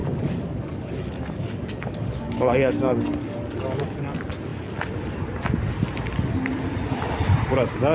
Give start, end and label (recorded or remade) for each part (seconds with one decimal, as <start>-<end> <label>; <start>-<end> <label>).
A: 0.0-3.8 remade; 3.8-7.9 recorded